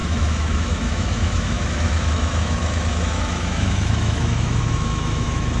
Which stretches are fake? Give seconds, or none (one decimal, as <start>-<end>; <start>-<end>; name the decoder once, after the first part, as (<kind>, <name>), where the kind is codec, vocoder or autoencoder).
0.0-5.6 (autoencoder, DAC-VAE)